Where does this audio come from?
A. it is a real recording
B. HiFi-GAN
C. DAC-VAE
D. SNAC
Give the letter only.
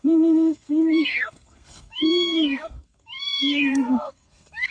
D